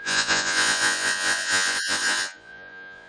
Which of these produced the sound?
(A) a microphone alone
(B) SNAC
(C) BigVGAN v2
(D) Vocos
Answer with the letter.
D